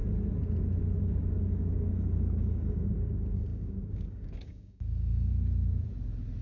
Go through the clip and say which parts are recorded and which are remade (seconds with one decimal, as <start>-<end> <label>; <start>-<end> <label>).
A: 0.0-1.0 recorded; 1.0-5.3 remade; 5.3-6.4 recorded